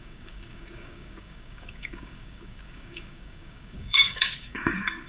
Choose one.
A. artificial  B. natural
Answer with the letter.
A